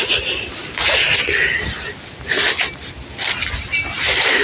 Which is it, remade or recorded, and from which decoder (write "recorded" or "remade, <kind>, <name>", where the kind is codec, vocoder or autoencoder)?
recorded